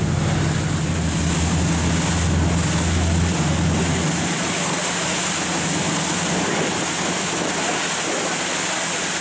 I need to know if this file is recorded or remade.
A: recorded